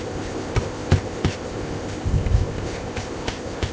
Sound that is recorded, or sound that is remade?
remade